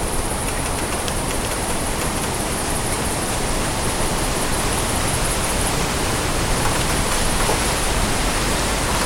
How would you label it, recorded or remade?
remade